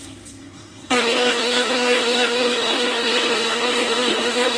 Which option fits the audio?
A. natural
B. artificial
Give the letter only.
B